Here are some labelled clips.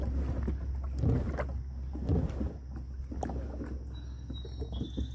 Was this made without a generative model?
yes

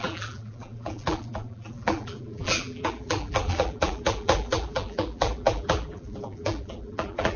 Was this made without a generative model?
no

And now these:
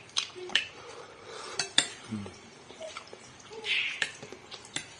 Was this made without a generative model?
no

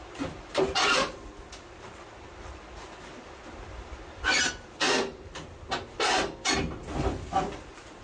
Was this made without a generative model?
yes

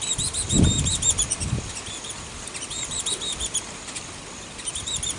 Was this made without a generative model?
no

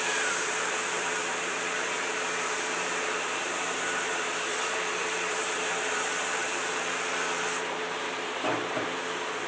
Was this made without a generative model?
no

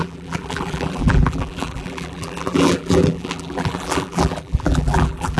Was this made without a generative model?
no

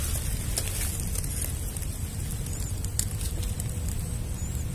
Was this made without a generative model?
yes